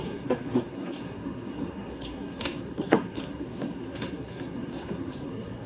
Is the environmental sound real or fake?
fake